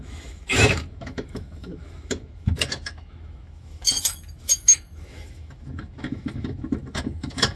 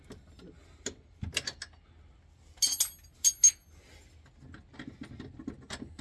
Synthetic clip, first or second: first